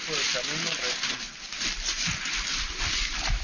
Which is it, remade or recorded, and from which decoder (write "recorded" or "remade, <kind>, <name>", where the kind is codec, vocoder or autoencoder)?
recorded